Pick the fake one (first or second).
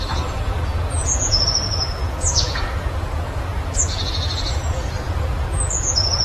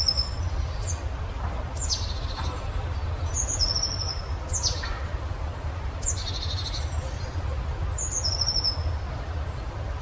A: first